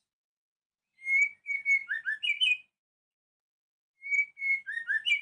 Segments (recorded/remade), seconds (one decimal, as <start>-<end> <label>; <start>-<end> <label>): 0.0-5.2 recorded